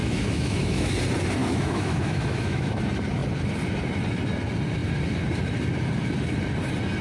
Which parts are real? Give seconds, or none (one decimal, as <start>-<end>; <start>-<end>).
0.9-1.4; 2.8-7.0